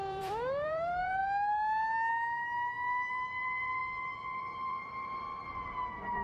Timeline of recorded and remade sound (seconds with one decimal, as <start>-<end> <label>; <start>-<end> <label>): 0.0-1.2 remade; 1.2-3.1 recorded; 3.1-6.2 remade